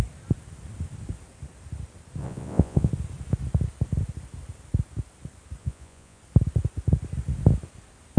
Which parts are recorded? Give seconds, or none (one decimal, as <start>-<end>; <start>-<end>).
0.0-2.2; 2.9-5.6; 6.2-8.2

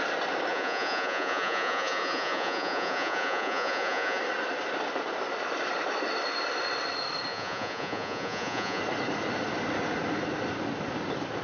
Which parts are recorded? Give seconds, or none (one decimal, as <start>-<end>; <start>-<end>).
0.0-0.5; 4.2-7.3; 8.8-11.4

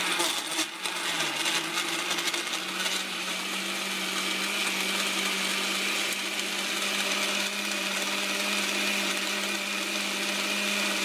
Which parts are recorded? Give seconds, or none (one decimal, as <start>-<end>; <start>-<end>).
0.0-2.9; 3.6-11.0